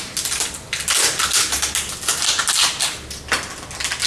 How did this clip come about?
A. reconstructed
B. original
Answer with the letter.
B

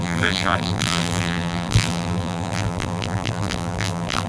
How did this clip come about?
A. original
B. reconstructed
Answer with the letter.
B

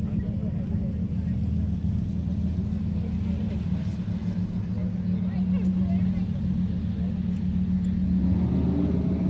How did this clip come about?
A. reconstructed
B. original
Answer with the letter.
B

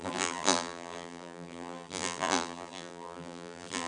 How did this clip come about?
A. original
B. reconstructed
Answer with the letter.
B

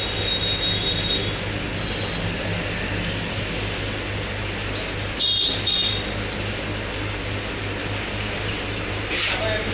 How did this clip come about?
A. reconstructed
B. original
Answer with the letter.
B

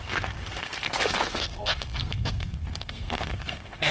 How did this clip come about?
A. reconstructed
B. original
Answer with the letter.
A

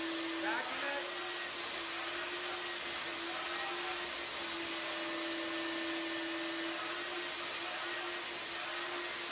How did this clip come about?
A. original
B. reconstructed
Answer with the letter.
A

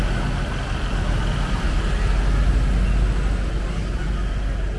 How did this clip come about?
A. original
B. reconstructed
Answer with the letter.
A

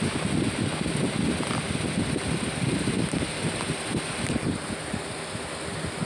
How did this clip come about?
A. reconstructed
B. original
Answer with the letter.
B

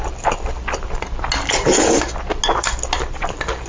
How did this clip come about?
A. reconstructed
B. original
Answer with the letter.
B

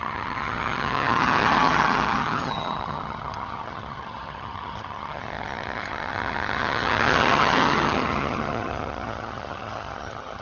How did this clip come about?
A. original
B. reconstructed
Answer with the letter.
B